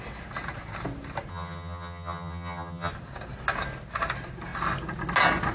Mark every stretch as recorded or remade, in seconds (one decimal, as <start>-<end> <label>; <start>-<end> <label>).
0.0-1.3 recorded; 1.3-2.9 remade; 2.9-5.5 recorded